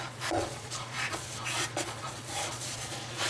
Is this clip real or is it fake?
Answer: fake